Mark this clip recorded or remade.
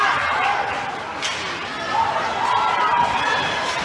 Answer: recorded